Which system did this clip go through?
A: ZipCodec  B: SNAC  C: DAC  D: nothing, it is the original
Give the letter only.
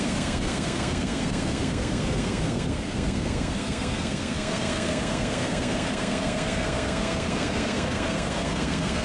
B